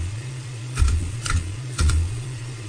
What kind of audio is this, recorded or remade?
remade